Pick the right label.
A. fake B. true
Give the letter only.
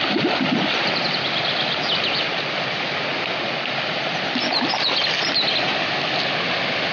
B